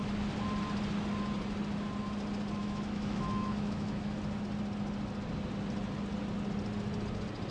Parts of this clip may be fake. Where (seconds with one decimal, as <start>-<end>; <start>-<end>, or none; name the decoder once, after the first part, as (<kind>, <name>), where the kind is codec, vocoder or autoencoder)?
2.6-4.2 (autoencoder, DAC-VAE)

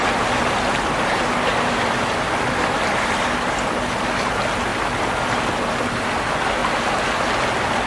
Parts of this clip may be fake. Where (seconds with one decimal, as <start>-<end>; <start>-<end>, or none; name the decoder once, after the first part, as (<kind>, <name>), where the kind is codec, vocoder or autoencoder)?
none

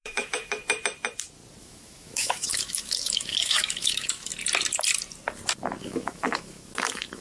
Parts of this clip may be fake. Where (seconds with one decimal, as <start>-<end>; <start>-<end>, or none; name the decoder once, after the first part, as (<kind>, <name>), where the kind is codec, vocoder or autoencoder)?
0.0-0.6 (autoencoder, DAC-VAE); 1.6-4.3; 5.8-7.2

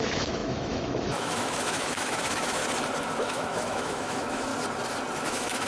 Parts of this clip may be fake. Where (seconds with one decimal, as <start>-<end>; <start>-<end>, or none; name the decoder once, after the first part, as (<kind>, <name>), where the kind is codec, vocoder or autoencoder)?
0.0-2.6 (autoencoder, DAC-VAE); 3.2-4.5; 5.2-5.7

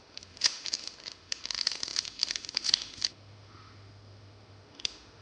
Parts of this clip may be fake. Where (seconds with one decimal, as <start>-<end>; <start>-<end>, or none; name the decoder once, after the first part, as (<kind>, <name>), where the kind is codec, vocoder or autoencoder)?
0.0-5.2 (autoencoder, DAC-VAE)